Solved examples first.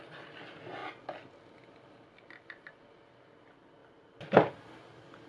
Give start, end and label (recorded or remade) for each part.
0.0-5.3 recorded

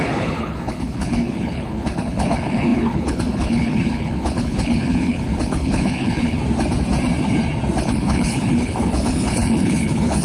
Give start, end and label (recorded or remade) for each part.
0.0-6.4 remade; 6.4-7.8 recorded; 7.8-10.2 remade

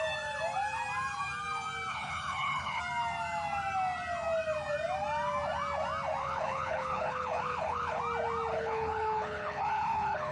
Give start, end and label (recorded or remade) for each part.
0.0-1.9 recorded; 1.9-2.8 remade; 2.8-6.2 recorded; 6.2-8.0 remade; 8.0-8.5 recorded; 8.5-10.3 remade

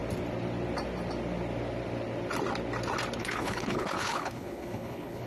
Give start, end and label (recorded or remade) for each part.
0.0-3.2 recorded; 3.2-5.3 remade

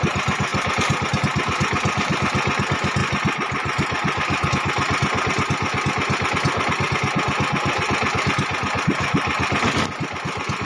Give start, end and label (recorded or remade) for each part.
0.0-10.6 recorded

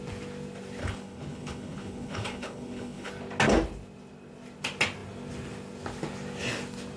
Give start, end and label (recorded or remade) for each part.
0.0-0.8 recorded; 0.8-3.1 remade; 3.1-7.0 recorded

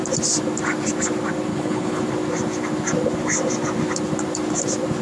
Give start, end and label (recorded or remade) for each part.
0.0-1.5 recorded; 1.5-2.0 remade; 2.0-5.0 recorded